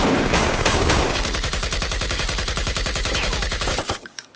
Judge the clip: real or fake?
fake